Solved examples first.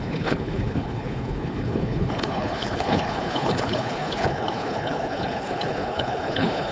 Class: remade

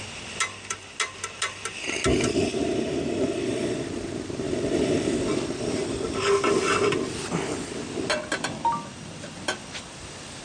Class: recorded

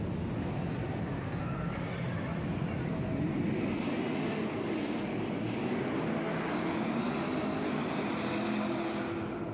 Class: recorded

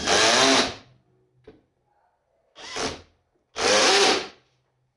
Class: recorded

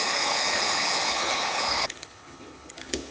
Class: remade